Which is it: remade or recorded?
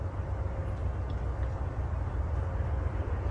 recorded